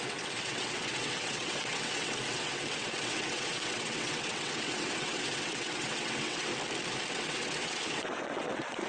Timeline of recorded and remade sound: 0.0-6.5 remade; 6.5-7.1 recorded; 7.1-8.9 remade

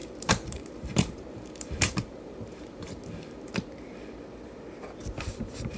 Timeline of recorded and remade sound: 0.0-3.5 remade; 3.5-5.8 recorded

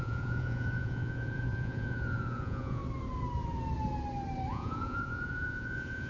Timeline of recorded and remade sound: 0.0-2.8 remade; 2.8-4.5 recorded; 4.5-6.1 remade